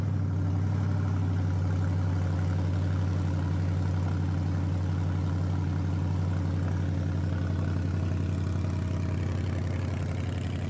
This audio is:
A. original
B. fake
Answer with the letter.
A